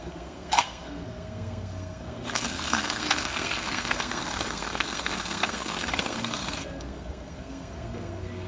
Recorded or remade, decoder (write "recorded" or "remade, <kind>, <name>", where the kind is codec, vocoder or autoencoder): remade, codec, SNAC